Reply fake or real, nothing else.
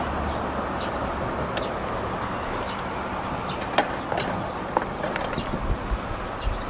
real